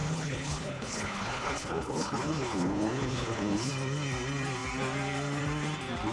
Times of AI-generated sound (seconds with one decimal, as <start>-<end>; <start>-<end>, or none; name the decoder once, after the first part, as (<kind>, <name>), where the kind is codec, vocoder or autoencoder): 0.0-3.7 (codec, HILCodec)